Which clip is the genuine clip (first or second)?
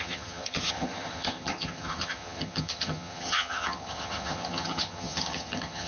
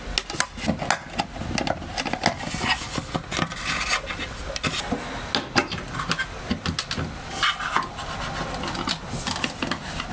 second